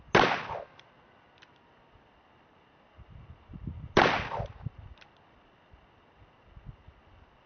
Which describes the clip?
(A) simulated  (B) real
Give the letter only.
B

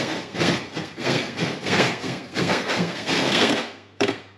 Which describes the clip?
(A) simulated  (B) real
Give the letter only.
A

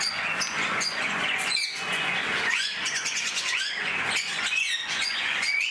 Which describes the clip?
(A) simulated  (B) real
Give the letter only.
A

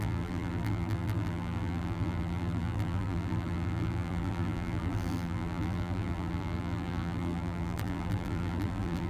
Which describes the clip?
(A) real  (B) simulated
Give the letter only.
B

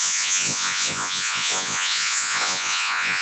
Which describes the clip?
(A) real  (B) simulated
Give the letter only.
B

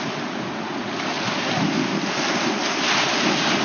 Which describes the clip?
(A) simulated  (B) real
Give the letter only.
B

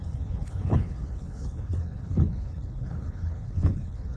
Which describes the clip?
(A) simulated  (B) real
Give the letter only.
A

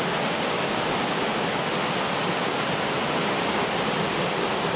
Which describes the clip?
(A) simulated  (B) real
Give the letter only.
B